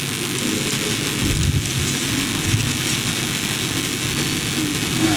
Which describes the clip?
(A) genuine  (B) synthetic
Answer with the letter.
A